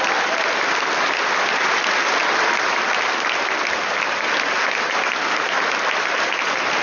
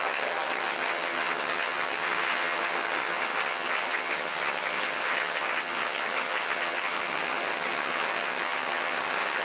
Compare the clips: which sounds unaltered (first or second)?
first